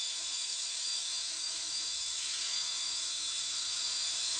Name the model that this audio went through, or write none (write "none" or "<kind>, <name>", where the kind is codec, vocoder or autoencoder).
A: autoencoder, DAC-VAE